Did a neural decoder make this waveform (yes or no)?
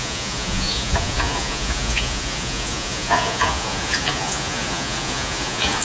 yes